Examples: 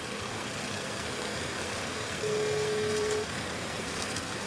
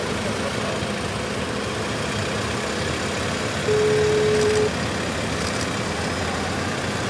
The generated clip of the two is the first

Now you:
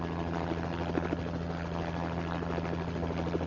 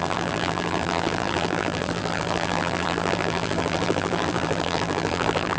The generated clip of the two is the second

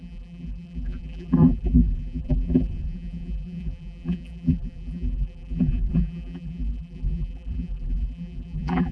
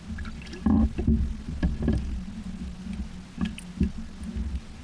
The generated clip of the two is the first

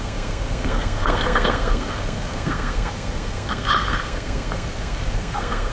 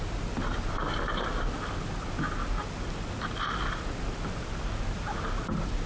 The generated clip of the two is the first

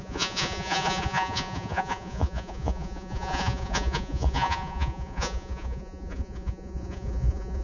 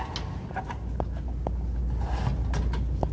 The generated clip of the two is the first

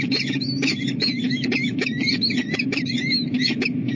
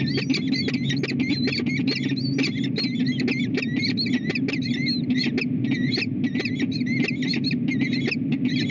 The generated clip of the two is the first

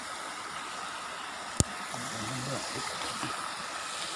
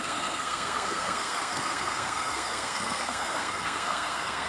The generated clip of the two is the second